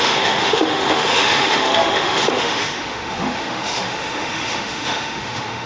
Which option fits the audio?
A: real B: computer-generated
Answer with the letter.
B